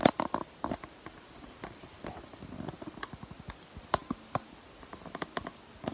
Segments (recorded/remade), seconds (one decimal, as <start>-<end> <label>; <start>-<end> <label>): 0.0-5.9 recorded